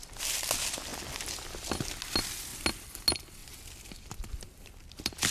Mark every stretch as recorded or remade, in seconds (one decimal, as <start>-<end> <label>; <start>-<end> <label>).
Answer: 0.0-5.3 recorded